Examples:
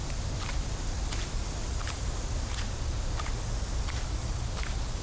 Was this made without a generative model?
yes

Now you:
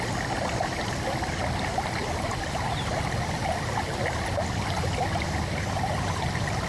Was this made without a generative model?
yes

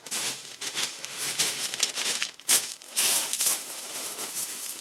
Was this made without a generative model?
no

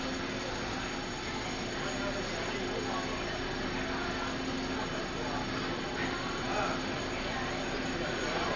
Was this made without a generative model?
yes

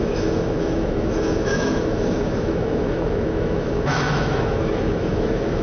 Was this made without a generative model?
no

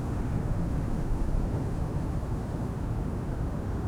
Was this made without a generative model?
no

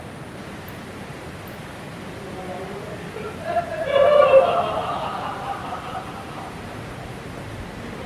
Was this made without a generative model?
yes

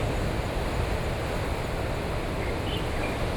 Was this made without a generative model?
yes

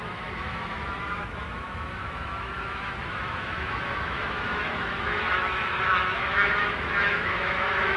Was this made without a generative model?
no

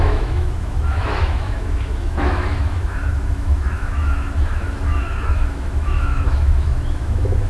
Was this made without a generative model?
no